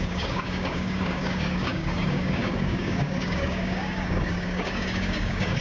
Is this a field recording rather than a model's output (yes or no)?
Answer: no